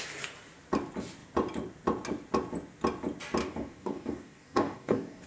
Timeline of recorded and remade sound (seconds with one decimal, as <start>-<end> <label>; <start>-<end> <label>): 0.0-3.4 recorded; 3.4-5.3 remade